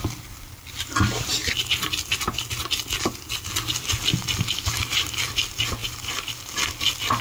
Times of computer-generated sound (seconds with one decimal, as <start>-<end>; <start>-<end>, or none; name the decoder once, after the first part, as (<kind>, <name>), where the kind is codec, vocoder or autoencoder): none